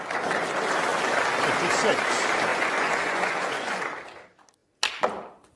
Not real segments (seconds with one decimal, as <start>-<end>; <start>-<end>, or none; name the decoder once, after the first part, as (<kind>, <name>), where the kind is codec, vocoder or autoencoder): 2.5-3.8 (vocoder, Vocos)